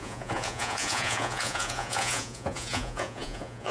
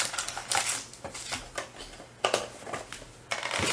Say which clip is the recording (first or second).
second